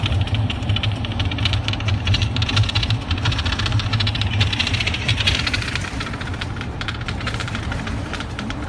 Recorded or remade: remade